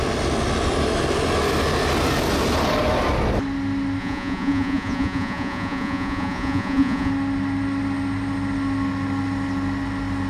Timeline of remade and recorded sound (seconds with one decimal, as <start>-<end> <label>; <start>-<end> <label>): 0.0-4.0 recorded; 4.0-7.1 remade; 7.1-10.3 recorded